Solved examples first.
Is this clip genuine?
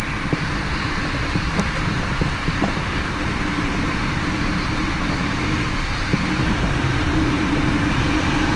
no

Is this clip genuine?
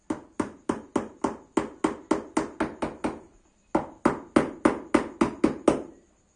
yes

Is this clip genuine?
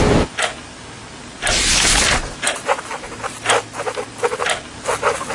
yes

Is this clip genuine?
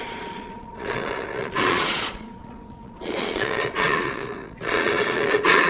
no